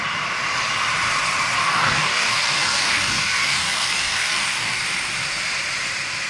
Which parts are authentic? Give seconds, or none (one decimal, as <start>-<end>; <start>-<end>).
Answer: 0.0-1.6; 4.8-6.3